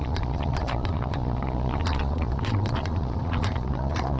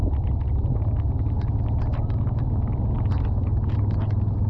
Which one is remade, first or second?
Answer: first